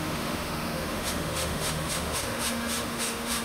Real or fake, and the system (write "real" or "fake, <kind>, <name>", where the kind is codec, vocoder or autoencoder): fake, autoencoder, DAC-VAE